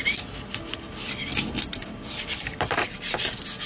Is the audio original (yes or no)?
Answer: yes